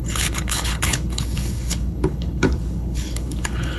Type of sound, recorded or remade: remade